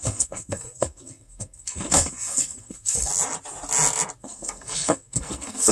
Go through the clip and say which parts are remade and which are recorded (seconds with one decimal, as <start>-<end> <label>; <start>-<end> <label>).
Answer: 0.0-3.1 remade; 3.1-4.2 recorded; 4.2-5.7 remade